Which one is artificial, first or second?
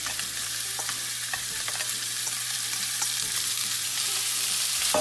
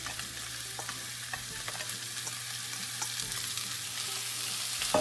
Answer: first